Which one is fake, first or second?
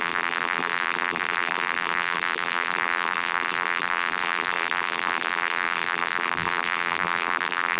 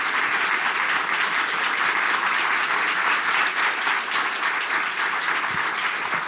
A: first